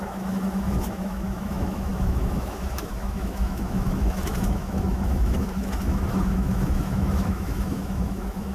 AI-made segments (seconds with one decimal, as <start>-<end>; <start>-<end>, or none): 0.0-8.5